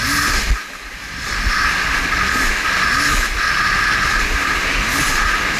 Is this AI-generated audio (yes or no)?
no